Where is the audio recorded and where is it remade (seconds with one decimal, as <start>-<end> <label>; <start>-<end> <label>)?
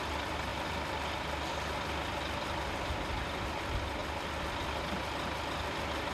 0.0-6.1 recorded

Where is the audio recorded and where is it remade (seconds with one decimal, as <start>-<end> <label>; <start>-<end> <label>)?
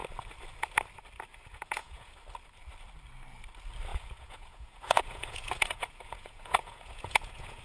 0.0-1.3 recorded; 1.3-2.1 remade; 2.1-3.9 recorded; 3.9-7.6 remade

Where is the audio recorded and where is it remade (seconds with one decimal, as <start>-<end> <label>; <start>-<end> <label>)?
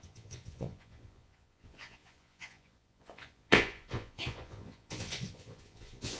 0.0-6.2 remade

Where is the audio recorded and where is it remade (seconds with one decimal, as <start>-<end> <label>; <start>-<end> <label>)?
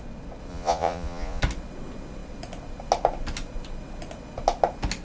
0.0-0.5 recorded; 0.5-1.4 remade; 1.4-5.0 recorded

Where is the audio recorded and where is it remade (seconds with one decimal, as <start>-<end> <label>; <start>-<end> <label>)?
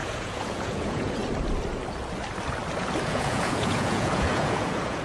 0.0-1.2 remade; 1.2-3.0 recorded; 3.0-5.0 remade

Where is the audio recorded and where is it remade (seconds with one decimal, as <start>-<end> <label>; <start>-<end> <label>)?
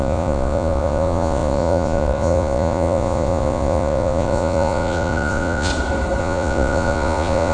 0.0-5.7 remade; 5.7-6.2 recorded; 6.2-7.5 remade